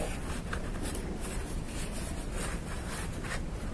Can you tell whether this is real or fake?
real